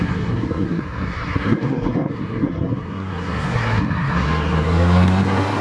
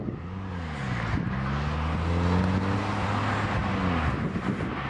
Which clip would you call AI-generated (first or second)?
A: first